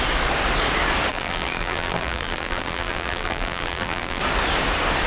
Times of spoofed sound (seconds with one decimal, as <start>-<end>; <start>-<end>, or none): 1.1-4.2